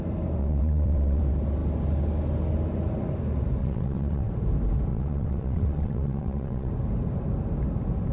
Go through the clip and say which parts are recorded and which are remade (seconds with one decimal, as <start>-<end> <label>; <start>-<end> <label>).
0.0-0.4 recorded; 0.4-1.2 remade; 1.2-3.6 recorded; 3.6-4.3 remade; 4.3-4.9 recorded; 4.9-6.7 remade; 6.7-8.1 recorded

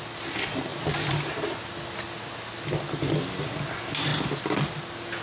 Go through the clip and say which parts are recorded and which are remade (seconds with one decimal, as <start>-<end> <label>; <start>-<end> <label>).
0.0-5.2 recorded